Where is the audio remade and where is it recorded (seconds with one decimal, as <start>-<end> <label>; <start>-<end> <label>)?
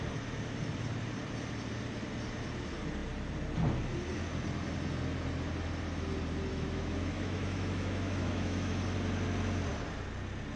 0.0-6.5 recorded; 6.5-8.7 remade; 8.7-10.6 recorded